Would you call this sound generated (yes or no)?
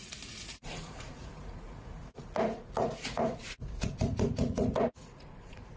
yes